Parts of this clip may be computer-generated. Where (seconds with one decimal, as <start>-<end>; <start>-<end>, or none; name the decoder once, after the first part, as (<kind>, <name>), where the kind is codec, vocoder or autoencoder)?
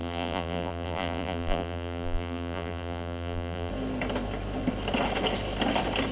0.0-3.7 (vocoder, BigVGAN v2)